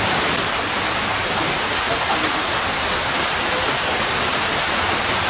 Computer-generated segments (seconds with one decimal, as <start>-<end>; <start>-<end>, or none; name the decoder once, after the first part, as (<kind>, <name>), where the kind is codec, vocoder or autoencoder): 1.1-4.3 (vocoder, BigVGAN v2)